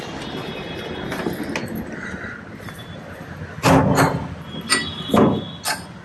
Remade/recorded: recorded